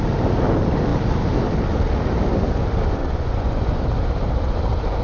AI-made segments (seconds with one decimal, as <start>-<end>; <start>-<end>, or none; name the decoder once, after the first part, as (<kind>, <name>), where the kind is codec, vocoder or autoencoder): 3.0-3.8 (vocoder, Vocos)

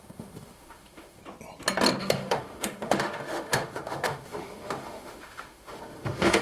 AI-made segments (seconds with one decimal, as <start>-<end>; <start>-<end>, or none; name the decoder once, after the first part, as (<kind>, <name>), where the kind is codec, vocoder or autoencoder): 0.0-1.2 (autoencoder, DAC-VAE); 2.0-6.4